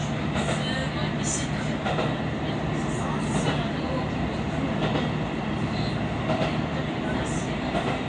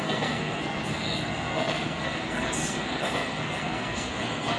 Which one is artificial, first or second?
second